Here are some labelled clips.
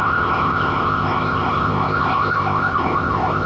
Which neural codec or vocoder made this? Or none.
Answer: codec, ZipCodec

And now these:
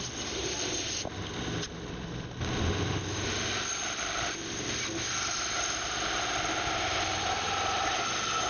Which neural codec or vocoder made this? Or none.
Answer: none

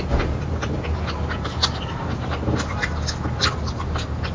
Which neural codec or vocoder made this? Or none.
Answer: none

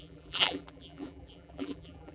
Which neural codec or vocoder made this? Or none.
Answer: vocoder, BigVGAN v2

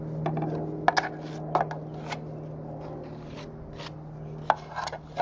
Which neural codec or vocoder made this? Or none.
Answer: none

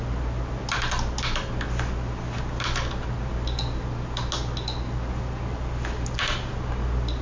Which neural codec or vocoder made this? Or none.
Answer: none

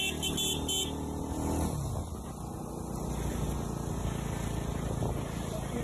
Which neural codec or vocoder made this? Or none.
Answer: none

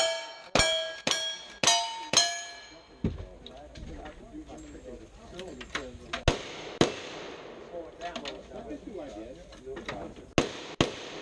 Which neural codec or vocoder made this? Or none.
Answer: none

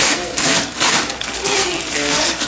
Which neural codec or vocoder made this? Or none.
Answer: codec, SNAC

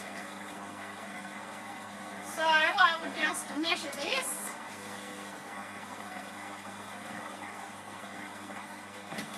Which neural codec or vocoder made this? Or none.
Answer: codec, SNAC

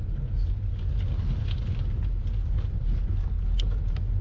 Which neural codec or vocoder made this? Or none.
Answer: none